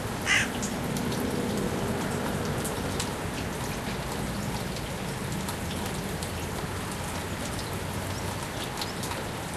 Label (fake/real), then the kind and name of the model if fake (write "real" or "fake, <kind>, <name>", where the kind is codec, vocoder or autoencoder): real